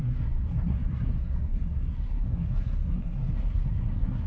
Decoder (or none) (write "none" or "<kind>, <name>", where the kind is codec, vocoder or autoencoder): codec, SNAC